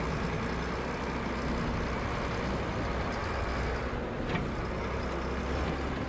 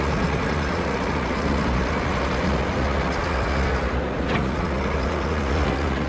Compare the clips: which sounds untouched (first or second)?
first